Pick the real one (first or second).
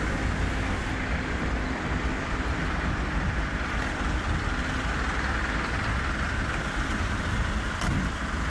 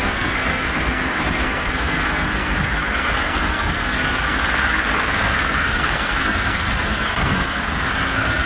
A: first